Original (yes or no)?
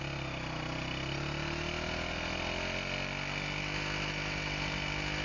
yes